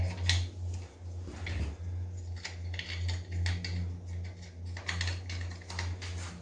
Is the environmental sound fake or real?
real